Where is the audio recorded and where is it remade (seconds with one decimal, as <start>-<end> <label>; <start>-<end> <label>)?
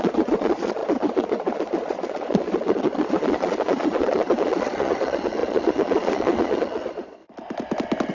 0.0-7.2 remade; 7.2-8.1 recorded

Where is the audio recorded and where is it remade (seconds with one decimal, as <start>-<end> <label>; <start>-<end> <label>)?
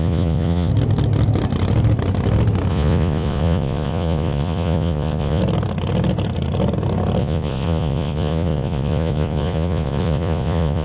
0.0-0.7 remade; 0.7-2.7 recorded; 2.7-5.4 remade; 5.4-7.2 recorded; 7.2-10.8 remade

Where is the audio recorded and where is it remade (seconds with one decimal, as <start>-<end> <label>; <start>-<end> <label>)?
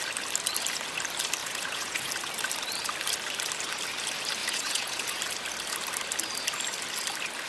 0.0-1.4 recorded; 1.4-2.1 remade; 2.1-4.4 recorded; 4.4-5.2 remade; 5.2-7.5 recorded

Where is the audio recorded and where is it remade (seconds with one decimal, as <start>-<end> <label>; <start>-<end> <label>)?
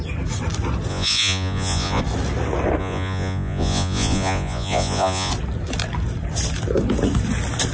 0.0-0.9 recorded; 0.9-2.0 remade; 2.0-2.8 recorded; 2.8-5.3 remade; 5.3-7.7 recorded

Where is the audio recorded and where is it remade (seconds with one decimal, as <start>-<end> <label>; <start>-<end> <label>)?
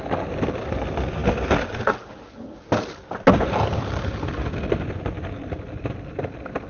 0.0-6.7 recorded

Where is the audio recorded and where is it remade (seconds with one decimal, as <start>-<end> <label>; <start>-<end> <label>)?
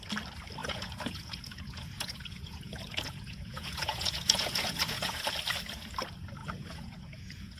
0.0-0.6 recorded; 0.6-5.2 remade; 5.2-6.4 recorded; 6.4-7.6 remade